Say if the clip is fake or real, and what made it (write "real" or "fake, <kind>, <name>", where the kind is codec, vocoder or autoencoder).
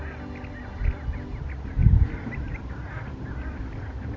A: real